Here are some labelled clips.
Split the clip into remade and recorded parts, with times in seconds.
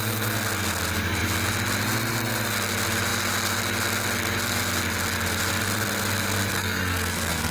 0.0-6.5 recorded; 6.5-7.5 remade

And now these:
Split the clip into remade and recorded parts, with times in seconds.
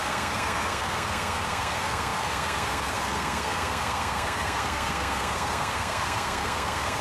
0.0-7.0 remade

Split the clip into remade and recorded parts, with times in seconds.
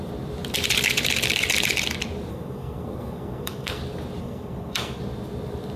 0.0-2.3 recorded; 2.3-3.8 remade; 3.8-4.2 recorded; 4.2-5.0 remade; 5.0-5.8 recorded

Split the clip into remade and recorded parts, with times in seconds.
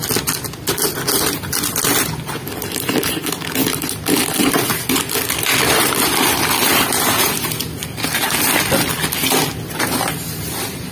0.0-10.9 recorded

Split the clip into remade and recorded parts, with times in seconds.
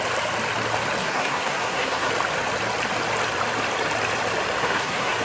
0.0-1.0 recorded; 1.0-2.1 remade; 2.1-4.6 recorded; 4.6-5.2 remade